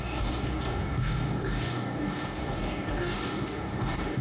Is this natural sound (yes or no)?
no